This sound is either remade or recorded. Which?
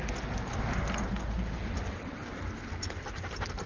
recorded